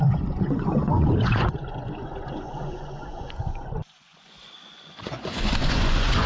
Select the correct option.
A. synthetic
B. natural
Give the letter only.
A